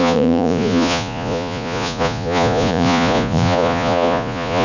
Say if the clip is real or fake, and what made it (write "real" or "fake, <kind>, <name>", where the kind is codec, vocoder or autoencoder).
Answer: fake, vocoder, Vocos